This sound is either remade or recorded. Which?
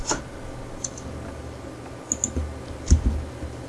recorded